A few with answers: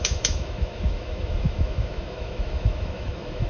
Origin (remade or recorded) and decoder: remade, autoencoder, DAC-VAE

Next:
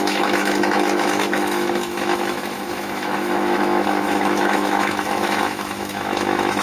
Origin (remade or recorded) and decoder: remade, autoencoder, DAC-VAE